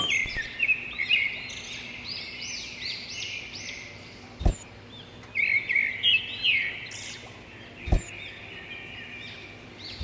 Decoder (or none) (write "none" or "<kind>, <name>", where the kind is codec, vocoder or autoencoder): none